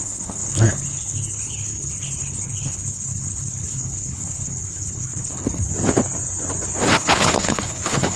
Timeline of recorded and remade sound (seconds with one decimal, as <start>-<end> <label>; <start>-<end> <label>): 0.0-5.7 remade; 5.7-6.9 recorded; 6.9-8.2 remade